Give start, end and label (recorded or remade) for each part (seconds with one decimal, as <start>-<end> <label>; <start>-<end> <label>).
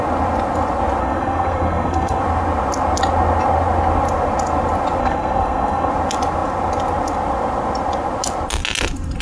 0.0-1.0 recorded; 1.0-2.2 remade; 2.2-5.0 recorded; 5.0-5.9 remade; 5.9-9.2 recorded